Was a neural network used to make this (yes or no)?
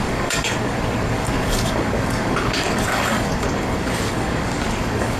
yes